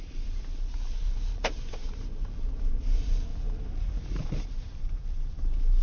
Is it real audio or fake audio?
fake